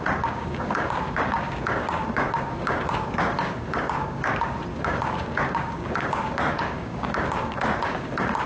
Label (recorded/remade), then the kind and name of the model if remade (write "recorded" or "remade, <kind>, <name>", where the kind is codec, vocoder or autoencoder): remade, codec, DAC